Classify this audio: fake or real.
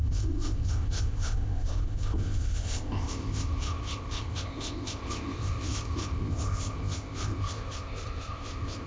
fake